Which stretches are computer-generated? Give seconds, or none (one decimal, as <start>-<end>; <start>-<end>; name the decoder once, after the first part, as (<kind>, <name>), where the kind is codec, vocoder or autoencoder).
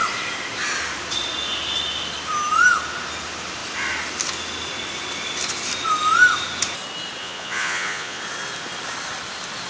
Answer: 7.2-8.2 (vocoder, Vocos)